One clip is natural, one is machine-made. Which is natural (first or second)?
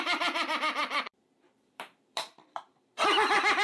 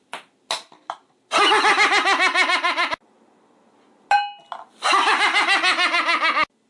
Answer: second